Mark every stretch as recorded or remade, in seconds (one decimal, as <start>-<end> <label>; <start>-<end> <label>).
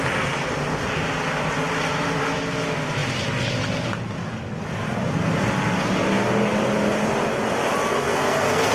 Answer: 0.0-7.9 recorded; 7.9-8.7 remade